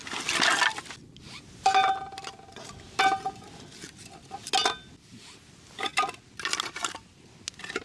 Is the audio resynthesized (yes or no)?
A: no